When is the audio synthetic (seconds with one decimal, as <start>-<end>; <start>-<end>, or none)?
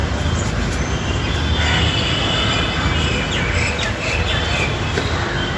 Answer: none